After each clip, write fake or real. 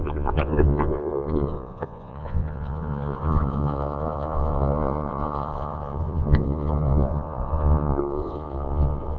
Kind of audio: fake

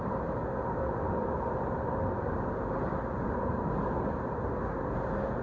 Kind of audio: real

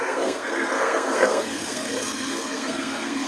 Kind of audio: fake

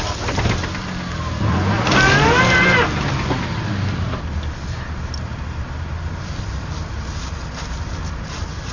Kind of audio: real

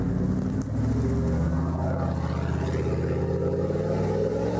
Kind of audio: real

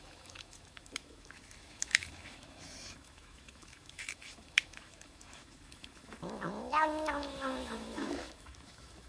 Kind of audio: fake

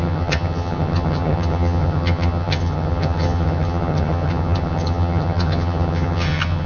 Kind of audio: fake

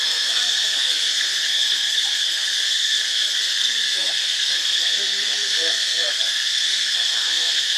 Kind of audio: fake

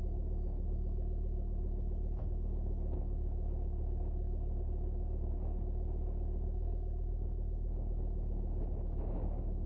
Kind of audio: real